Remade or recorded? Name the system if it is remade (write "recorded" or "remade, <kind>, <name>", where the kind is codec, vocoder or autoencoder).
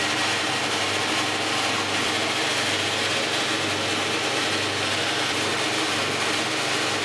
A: recorded